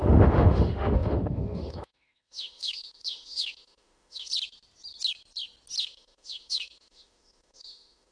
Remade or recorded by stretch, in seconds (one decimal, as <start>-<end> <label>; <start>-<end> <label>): 0.0-4.3 remade; 4.3-5.8 recorded; 5.8-8.1 remade